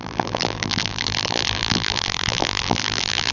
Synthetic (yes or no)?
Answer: yes